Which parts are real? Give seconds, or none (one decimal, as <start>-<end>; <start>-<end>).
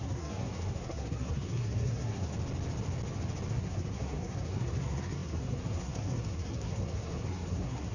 2.3-3.5